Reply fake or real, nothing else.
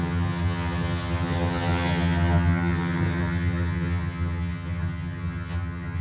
fake